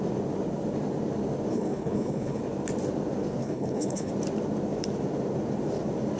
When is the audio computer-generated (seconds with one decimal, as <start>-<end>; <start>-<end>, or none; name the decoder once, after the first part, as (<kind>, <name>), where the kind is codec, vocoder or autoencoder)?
1.5-2.4 (codec, HILCodec); 3.4-4.1